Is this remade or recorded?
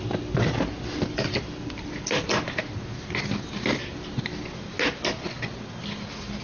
recorded